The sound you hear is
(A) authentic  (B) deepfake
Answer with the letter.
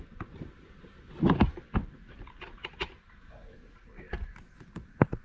A